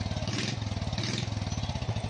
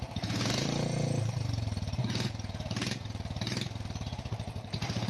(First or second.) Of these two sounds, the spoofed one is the second